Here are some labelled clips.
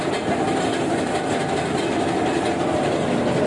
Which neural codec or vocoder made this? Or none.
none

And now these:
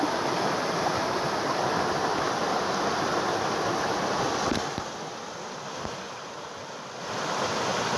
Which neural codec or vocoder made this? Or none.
none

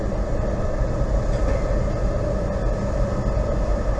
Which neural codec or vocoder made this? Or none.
none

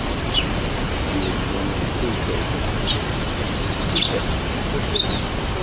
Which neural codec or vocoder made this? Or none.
none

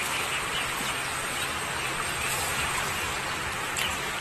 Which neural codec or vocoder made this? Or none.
none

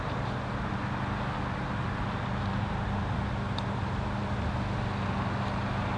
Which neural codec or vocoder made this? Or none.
none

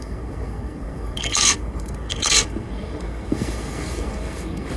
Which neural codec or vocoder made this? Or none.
codec, SNAC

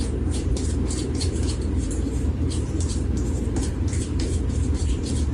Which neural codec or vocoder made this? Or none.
vocoder, BigVGAN v2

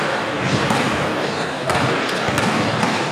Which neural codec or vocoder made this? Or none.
codec, DAC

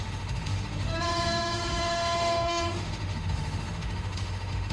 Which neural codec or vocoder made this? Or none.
autoencoder, DAC-VAE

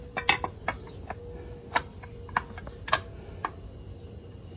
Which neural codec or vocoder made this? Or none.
none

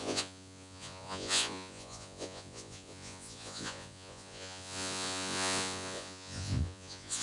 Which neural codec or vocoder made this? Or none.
vocoder, Vocos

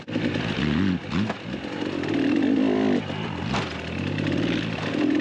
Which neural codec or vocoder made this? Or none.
none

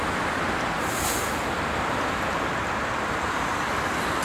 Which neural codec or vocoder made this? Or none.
vocoder, BigVGAN v2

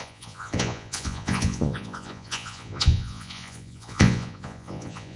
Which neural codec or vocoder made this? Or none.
vocoder, Vocos